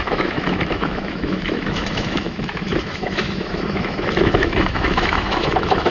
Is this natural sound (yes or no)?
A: no